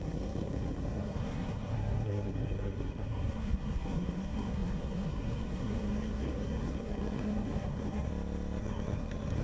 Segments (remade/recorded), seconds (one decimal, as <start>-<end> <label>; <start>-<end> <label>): 0.0-8.1 remade; 8.1-8.6 recorded; 8.6-9.4 remade

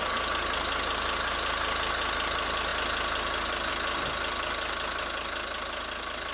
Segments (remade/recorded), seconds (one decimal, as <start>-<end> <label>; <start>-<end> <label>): 0.0-6.3 recorded

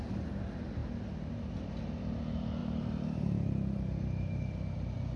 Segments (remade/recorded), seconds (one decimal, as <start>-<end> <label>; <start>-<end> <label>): 0.0-2.6 recorded; 2.6-4.5 remade; 4.5-5.2 recorded

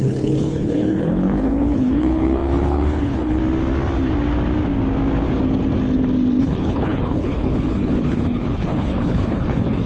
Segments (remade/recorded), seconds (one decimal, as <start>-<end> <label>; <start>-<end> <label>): 0.0-3.4 remade; 3.4-6.4 recorded; 6.4-9.9 remade

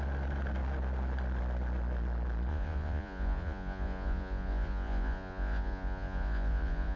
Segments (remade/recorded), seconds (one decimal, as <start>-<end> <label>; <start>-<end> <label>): 0.0-2.5 recorded; 2.5-7.0 remade

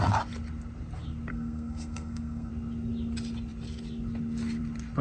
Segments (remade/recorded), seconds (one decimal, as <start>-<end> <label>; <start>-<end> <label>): 0.0-1.3 recorded; 1.3-2.5 remade; 2.5-5.0 recorded

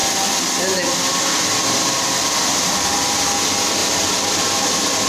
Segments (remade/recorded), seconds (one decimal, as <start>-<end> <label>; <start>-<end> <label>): 0.0-5.1 recorded